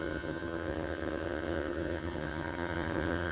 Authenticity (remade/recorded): remade